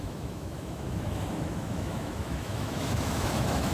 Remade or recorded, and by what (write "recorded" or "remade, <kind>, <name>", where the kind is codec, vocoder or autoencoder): remade, autoencoder, DAC-VAE